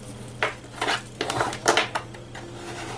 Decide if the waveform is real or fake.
real